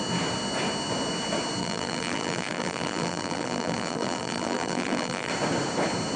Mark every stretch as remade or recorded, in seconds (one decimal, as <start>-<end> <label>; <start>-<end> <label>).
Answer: 0.0-1.6 recorded; 1.6-5.3 remade; 5.3-6.2 recorded